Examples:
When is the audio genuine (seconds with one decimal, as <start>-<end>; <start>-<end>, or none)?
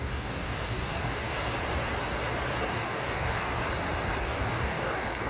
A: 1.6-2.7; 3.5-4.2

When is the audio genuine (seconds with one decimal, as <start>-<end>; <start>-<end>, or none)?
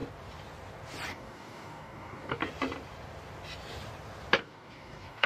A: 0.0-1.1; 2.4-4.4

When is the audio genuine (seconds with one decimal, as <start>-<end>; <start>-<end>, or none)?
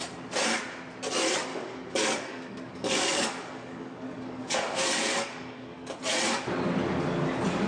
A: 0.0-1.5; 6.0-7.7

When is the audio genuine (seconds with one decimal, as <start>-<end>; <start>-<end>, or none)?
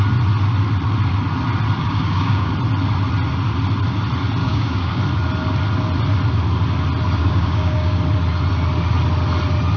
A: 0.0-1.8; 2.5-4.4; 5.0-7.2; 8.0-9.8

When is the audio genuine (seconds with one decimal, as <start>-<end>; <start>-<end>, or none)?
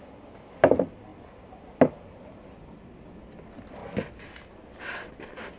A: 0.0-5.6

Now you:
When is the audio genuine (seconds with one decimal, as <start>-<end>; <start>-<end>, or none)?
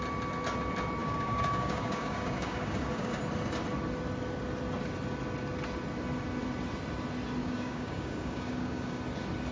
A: 0.0-1.0; 3.2-7.4; 9.0-9.5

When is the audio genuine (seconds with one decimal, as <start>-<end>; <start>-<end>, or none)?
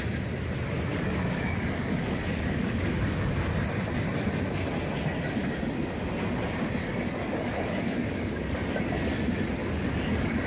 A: 0.0-0.9; 3.3-6.8; 8.8-9.6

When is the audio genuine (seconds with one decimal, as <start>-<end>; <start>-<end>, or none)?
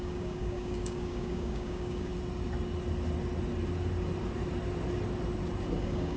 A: 2.1-5.8